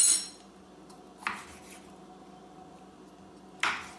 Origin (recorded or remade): recorded